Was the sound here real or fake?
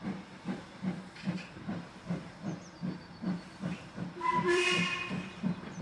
fake